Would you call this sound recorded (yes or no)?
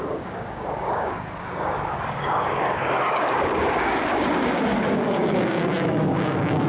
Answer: no